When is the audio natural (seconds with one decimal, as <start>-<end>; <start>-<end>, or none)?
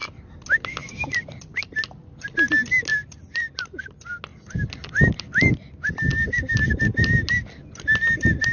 0.0-2.9; 3.9-4.3; 5.2-6.1; 6.8-8.5